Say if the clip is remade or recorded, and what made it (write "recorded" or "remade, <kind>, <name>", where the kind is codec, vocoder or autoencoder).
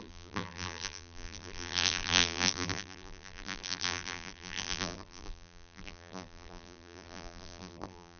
remade, vocoder, BigVGAN v2